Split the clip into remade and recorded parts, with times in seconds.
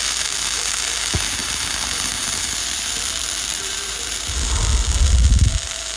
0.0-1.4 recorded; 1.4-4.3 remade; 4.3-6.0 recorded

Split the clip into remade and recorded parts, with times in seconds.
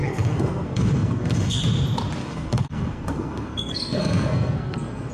0.0-1.6 remade; 1.6-2.2 recorded; 2.2-5.1 remade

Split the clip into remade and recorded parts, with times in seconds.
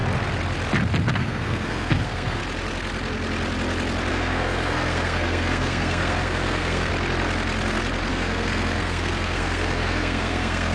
0.0-1.1 recorded; 1.1-2.4 remade; 2.4-4.1 recorded; 4.1-6.9 remade; 6.9-8.1 recorded; 8.1-10.7 remade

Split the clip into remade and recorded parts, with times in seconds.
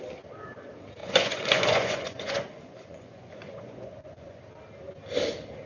0.0-1.0 recorded; 1.0-4.4 remade; 4.4-5.7 recorded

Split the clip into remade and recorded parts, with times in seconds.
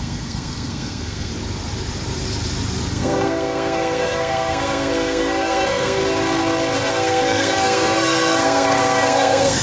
0.0-1.3 remade; 1.3-2.9 recorded; 2.9-6.0 remade; 6.0-6.9 recorded; 6.9-9.6 remade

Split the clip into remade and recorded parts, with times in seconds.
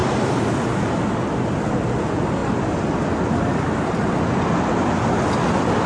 0.0-0.6 remade; 0.6-5.9 recorded